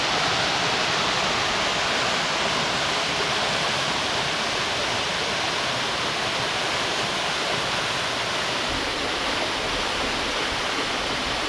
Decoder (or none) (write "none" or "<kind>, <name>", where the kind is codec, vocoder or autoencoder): none